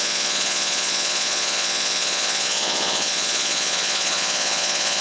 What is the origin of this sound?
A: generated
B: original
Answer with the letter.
A